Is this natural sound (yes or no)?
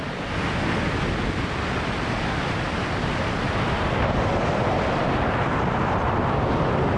yes